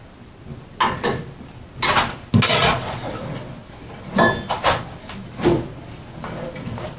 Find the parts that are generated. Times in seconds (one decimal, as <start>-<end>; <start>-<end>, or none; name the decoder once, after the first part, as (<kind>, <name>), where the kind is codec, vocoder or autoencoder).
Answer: 2.5-3.2 (vocoder, Vocos)